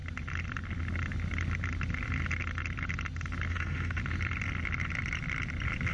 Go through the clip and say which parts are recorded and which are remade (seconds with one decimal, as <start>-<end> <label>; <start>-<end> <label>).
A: 0.0-3.5 recorded; 3.5-4.0 remade; 4.0-5.9 recorded